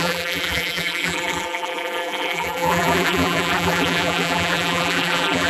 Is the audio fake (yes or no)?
yes